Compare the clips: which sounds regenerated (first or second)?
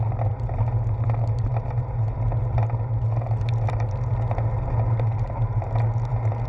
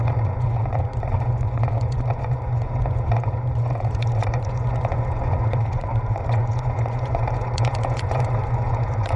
second